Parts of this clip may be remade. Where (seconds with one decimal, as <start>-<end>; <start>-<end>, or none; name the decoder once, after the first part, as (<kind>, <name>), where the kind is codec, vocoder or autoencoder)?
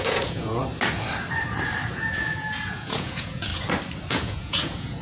0.0-0.6 (vocoder, Vocos); 1.9-3.5; 4.1-5.0